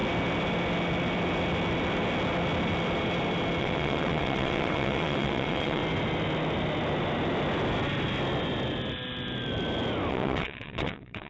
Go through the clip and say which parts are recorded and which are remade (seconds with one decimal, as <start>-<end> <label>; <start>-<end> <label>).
0.0-3.6 recorded; 3.6-5.8 remade; 5.8-10.1 recorded; 10.1-11.3 remade